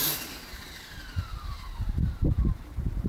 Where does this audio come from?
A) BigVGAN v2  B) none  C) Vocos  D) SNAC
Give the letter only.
A